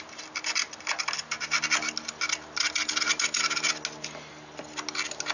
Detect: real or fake real